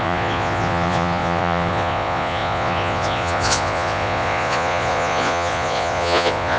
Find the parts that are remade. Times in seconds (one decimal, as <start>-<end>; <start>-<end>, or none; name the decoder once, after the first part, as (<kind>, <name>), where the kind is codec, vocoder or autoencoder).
0.0-6.6 (vocoder, Vocos)